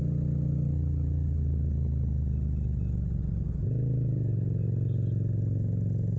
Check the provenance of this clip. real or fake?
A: real